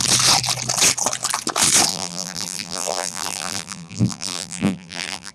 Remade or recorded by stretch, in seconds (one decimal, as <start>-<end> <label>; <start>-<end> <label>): 0.0-1.9 recorded; 1.9-5.3 remade